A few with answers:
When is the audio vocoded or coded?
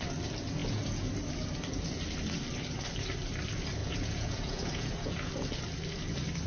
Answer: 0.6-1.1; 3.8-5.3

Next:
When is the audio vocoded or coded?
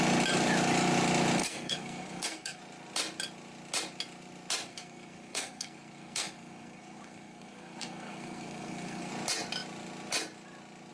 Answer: 1.4-2.6; 4.7-9.1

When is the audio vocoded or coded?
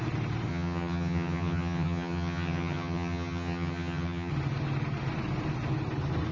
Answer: 0.5-4.3